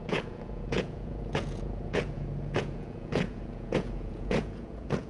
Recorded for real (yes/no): no